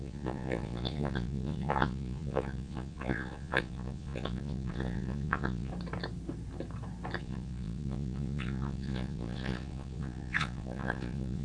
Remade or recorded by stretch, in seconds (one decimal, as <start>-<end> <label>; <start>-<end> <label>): 0.0-5.7 remade; 5.7-7.2 recorded; 7.2-11.4 remade